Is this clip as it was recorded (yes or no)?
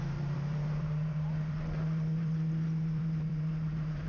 no